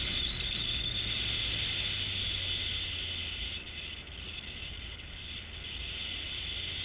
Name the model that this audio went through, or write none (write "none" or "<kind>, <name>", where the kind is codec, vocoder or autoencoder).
none